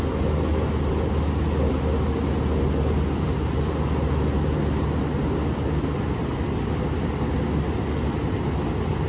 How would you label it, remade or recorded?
recorded